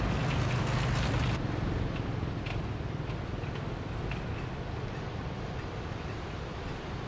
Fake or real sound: real